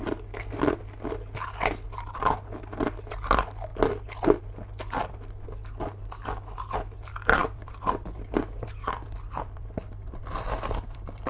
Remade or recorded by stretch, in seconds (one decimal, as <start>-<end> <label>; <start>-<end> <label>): 0.0-7.4 recorded; 7.4-11.3 remade